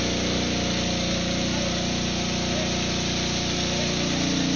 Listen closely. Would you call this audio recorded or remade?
recorded